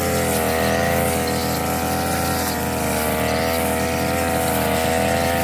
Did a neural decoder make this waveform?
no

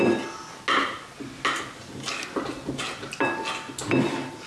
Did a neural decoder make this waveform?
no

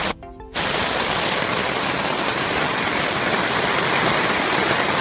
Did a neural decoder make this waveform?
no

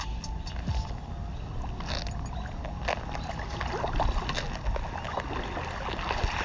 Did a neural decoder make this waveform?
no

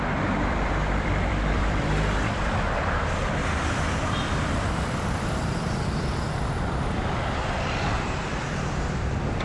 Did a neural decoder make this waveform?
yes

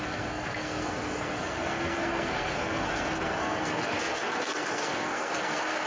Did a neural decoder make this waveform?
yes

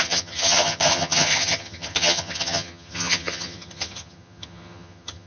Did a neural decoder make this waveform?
yes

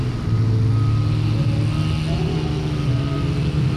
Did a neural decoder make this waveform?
no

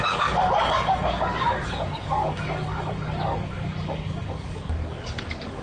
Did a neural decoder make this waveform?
yes